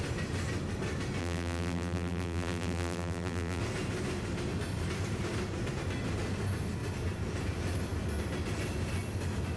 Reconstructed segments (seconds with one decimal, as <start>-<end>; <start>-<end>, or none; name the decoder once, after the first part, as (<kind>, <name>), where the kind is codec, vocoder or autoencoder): 1.2-3.6 (vocoder, BigVGAN v2)